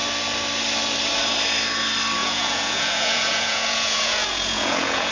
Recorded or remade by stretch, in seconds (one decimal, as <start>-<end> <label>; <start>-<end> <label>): 0.0-2.2 recorded; 2.2-5.1 remade